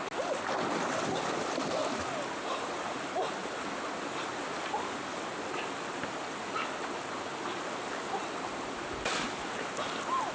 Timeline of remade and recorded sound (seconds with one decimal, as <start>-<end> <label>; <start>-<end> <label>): 0.0-10.3 recorded